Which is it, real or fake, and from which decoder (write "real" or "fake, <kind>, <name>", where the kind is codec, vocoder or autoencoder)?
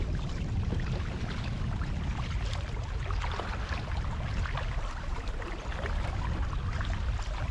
real